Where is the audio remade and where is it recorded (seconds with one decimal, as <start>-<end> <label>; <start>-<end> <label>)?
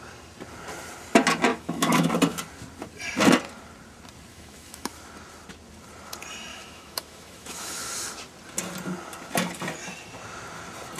0.0-1.5 recorded; 1.5-2.1 remade; 2.1-4.3 recorded; 4.3-4.9 remade; 4.9-6.5 recorded; 6.5-7.9 remade; 7.9-11.0 recorded